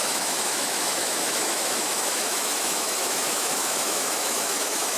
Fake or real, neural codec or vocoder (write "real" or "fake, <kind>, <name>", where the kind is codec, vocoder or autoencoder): fake, autoencoder, DAC-VAE